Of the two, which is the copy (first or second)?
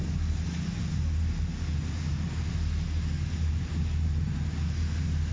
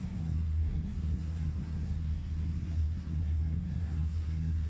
second